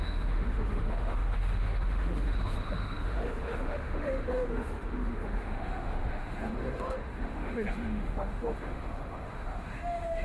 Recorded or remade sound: remade